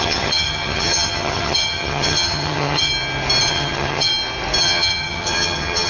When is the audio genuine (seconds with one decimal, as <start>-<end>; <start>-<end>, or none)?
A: 2.9-3.5; 4.1-4.6